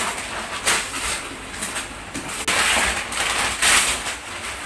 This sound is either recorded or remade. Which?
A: recorded